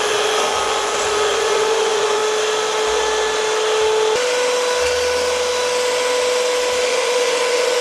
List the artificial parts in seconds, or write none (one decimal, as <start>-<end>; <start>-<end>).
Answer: 0.0-2.2; 6.9-7.8